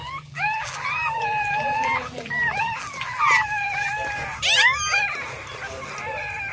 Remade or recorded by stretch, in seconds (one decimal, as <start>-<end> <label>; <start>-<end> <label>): 0.0-3.9 remade; 3.9-6.5 recorded